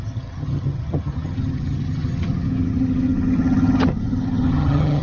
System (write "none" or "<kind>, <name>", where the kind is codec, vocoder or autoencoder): vocoder, HiFi-GAN